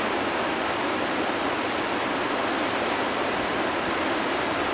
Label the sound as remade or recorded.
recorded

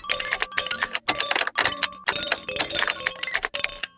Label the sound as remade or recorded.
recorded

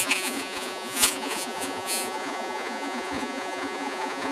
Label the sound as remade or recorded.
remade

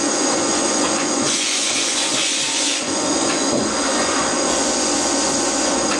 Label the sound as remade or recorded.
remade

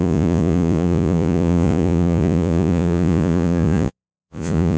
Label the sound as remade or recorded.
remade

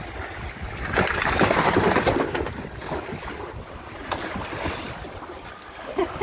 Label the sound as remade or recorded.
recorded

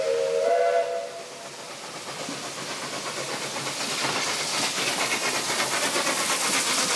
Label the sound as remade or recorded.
recorded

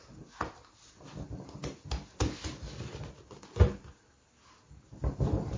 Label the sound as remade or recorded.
recorded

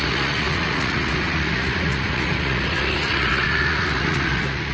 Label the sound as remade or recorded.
remade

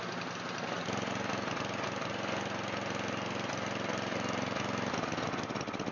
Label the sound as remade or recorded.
recorded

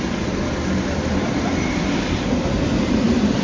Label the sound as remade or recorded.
recorded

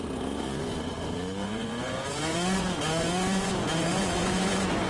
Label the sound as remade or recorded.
remade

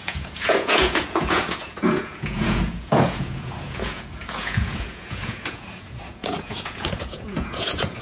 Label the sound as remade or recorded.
remade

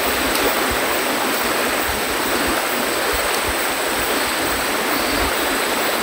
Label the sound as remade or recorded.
recorded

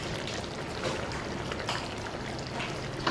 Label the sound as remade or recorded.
recorded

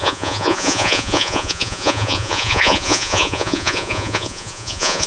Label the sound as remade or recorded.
remade